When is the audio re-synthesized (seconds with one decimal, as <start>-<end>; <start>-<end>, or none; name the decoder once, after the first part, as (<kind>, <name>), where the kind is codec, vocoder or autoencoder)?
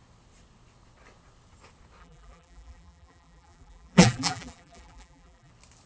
2.0-5.5 (vocoder, BigVGAN v2)